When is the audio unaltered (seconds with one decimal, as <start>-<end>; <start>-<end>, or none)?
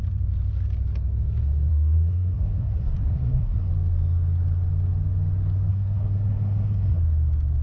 0.0-1.7; 3.7-5.7; 7.0-7.6